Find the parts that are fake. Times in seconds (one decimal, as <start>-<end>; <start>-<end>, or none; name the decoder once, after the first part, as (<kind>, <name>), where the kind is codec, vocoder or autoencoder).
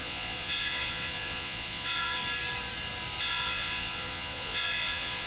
0.0-2.2 (vocoder, Vocos); 3.2-5.3